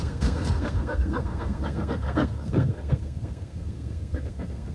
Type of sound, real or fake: fake